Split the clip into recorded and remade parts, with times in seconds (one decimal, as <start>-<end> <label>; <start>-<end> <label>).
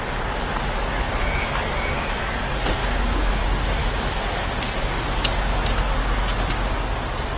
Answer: 0.0-2.8 recorded; 2.8-3.4 remade; 3.4-3.8 recorded; 3.8-4.5 remade; 4.5-7.4 recorded